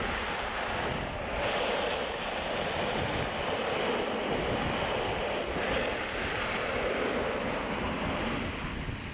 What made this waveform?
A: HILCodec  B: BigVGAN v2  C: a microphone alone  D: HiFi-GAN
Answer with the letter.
C